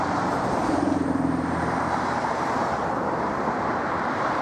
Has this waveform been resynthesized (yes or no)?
yes